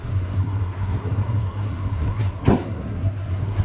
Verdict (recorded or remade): remade